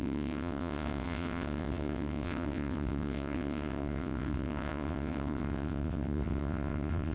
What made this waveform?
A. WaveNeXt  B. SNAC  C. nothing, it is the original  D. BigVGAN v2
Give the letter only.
A